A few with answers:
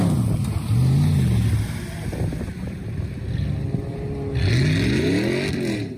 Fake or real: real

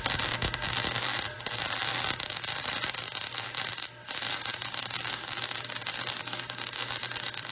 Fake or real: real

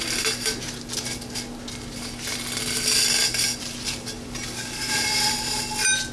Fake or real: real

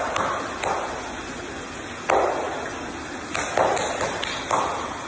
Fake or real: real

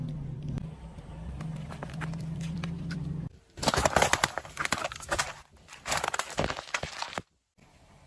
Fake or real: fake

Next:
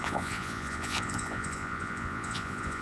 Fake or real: fake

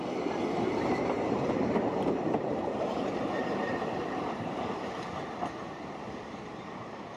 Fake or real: fake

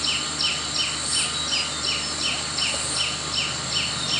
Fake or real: real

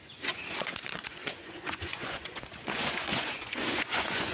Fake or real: fake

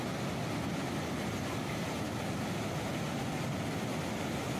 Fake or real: real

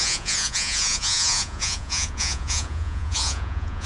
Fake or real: fake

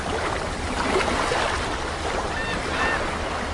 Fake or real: real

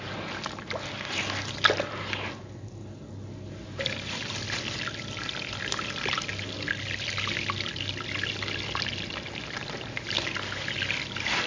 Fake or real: real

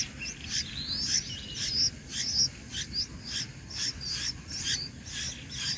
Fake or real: real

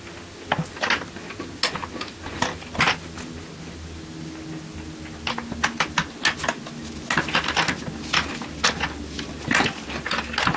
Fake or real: real